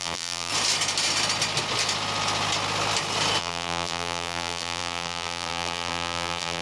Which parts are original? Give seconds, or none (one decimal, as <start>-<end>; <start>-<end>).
0.5-3.4